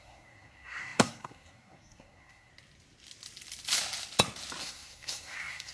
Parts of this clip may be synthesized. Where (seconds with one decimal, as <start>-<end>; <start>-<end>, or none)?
0.0-2.5; 4.6-5.7